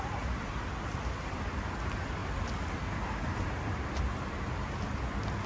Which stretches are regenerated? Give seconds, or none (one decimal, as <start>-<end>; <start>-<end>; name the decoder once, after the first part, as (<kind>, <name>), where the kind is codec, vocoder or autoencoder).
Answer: none